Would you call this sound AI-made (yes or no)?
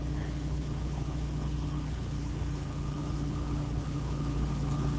yes